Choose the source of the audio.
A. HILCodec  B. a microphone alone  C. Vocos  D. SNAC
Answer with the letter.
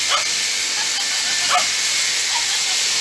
B